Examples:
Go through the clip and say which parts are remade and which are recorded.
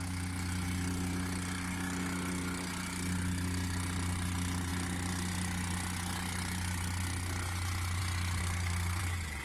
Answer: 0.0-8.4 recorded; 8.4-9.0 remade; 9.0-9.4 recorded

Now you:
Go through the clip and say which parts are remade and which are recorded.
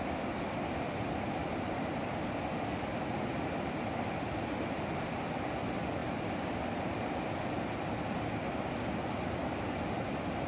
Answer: 0.0-10.5 recorded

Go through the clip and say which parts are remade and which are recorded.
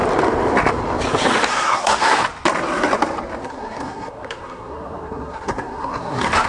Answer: 0.0-1.5 recorded; 1.5-2.2 remade; 2.2-3.4 recorded; 3.4-6.5 remade